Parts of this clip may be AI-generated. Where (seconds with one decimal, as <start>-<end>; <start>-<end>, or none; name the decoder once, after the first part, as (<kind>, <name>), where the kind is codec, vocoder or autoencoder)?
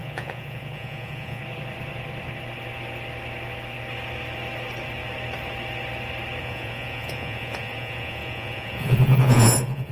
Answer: 0.0-1.4 (vocoder, Vocos); 6.4-9.9